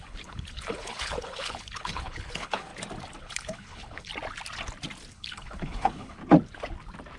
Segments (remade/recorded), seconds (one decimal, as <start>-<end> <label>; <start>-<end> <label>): 0.0-2.7 remade; 2.7-3.2 recorded; 3.2-4.1 remade; 4.1-5.1 recorded; 5.1-6.2 remade; 6.2-7.2 recorded